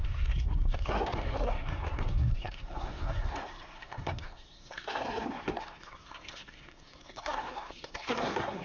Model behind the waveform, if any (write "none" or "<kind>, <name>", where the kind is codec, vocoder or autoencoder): codec, SNAC